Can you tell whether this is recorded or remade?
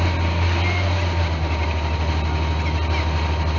recorded